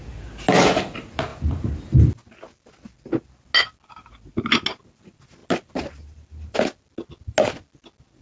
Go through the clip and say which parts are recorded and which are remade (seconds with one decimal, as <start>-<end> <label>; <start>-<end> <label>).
0.0-8.2 recorded

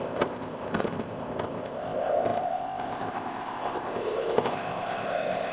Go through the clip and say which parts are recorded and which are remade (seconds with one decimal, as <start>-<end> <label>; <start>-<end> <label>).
0.0-5.5 remade

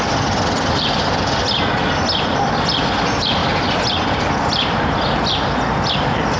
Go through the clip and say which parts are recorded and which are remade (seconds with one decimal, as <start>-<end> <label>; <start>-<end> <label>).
0.0-6.4 recorded

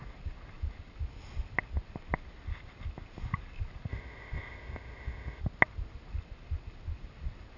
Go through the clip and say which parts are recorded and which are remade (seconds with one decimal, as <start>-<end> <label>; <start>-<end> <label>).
0.0-3.9 recorded; 3.9-5.4 remade; 5.4-7.6 recorded

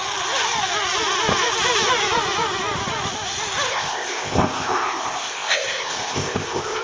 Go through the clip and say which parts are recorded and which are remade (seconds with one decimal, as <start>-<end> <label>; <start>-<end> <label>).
0.0-3.7 recorded; 3.7-6.8 remade

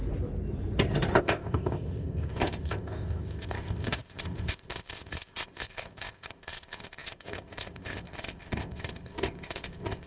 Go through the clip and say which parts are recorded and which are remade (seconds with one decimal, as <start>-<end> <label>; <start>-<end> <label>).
0.0-1.2 recorded; 1.2-10.1 remade